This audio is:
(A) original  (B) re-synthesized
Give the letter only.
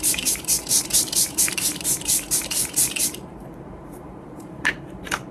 B